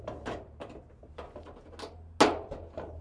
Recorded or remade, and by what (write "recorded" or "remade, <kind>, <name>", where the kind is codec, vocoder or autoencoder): recorded